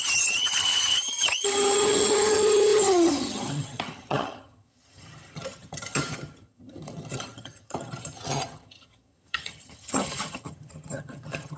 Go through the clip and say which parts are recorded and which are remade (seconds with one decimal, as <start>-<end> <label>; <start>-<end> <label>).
0.0-11.6 remade

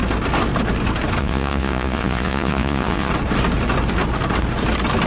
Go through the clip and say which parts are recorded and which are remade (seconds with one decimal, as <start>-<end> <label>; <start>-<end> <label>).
0.0-1.2 recorded; 1.2-3.1 remade; 3.1-5.1 recorded

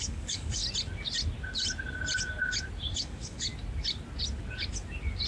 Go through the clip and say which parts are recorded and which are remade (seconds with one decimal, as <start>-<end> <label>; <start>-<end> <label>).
0.0-0.6 remade; 0.6-2.9 recorded; 2.9-3.5 remade; 3.5-5.3 recorded

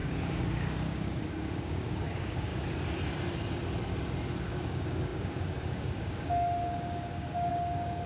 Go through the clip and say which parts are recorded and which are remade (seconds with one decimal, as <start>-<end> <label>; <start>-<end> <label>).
0.0-2.5 remade; 2.5-4.4 recorded; 4.4-8.1 remade

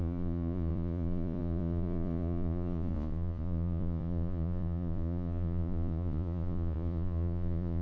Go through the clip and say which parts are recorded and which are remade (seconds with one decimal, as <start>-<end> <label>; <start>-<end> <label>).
0.0-7.8 remade